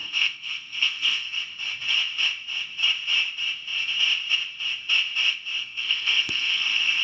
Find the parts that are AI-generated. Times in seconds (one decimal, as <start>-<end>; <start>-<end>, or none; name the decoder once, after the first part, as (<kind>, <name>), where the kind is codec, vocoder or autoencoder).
0.0-1.4 (codec, SNAC); 5.6-7.0